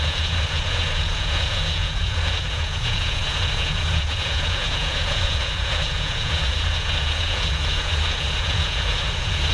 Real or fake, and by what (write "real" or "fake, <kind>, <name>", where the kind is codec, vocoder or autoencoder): fake, vocoder, Vocos